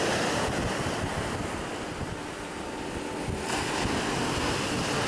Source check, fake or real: real